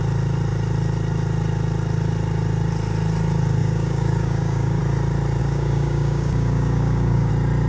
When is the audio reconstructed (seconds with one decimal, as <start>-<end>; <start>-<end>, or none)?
3.6-4.8; 5.4-7.3